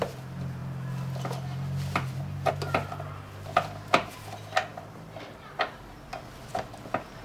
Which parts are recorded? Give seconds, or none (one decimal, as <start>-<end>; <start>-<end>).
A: 0.0-4.7; 6.7-7.2